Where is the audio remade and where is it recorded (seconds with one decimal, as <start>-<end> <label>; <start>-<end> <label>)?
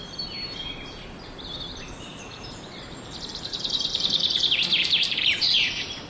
0.0-1.1 remade; 1.1-2.1 recorded; 2.1-6.1 remade